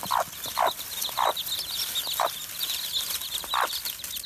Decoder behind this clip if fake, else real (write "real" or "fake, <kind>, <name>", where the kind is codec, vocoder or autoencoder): real